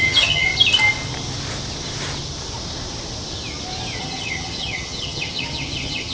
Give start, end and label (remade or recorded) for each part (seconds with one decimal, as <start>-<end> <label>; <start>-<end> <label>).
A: 0.0-0.5 remade; 0.5-4.0 recorded; 4.0-6.1 remade